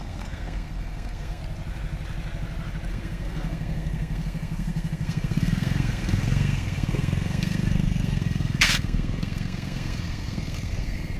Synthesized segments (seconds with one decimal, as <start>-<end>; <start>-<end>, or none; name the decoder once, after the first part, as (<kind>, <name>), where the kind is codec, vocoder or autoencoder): 0.0-1.4 (codec, SNAC); 2.9-11.2